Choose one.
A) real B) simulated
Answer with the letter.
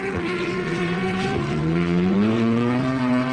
B